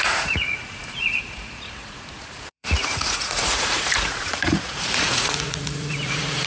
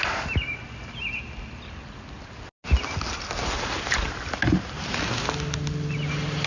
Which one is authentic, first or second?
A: second